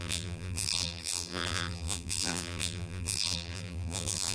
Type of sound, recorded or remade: remade